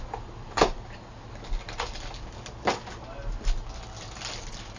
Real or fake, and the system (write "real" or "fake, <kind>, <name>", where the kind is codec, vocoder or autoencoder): real